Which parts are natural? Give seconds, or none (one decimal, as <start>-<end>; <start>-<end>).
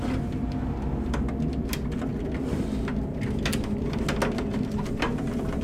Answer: 0.0-5.6